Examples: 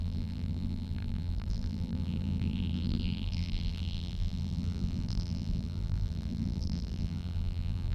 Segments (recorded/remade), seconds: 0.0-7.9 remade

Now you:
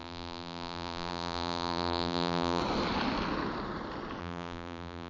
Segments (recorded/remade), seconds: 0.0-2.6 remade; 2.6-4.2 recorded; 4.2-5.1 remade

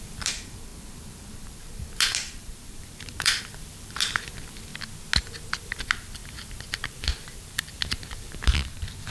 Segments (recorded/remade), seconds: 0.0-4.7 remade; 4.7-5.6 recorded; 5.6-9.1 remade

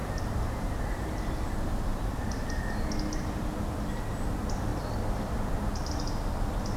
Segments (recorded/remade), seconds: 0.0-1.1 remade; 1.1-1.9 recorded; 1.9-2.8 remade; 2.8-6.8 recorded

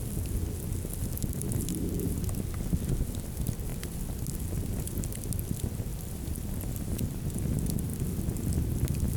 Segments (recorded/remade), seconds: 0.0-3.7 recorded; 3.7-4.3 remade; 4.3-5.9 recorded; 5.9-6.7 remade; 6.7-7.9 recorded; 7.9-8.5 remade; 8.5-9.2 recorded

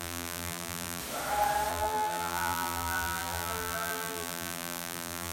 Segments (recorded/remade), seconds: 0.0-1.0 remade; 1.0-1.7 recorded; 1.7-5.3 remade

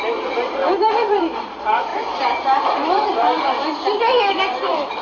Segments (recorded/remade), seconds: 0.0-0.6 recorded; 0.6-1.2 remade; 1.2-1.9 recorded; 1.9-5.0 remade

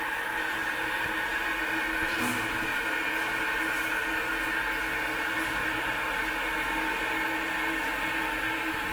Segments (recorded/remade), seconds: 0.0-0.6 recorded; 0.6-1.4 remade; 1.4-5.6 recorded; 5.6-6.5 remade; 6.5-8.9 recorded